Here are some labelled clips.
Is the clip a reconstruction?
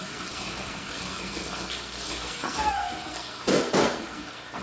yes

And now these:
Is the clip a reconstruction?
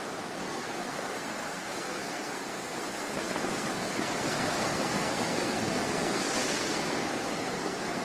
yes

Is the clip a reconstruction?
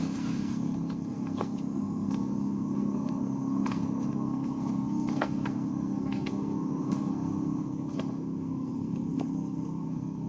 yes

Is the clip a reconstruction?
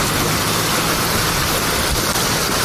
no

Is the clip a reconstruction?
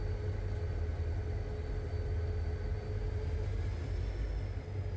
no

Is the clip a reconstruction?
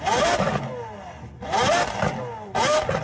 no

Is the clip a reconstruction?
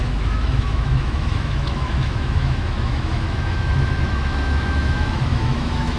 yes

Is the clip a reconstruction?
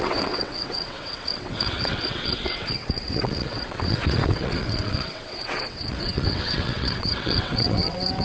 yes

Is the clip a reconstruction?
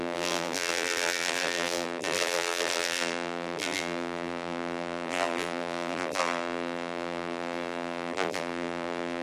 yes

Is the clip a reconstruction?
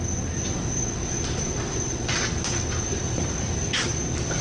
yes